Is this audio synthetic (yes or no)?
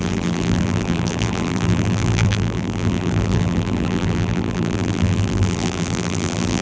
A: yes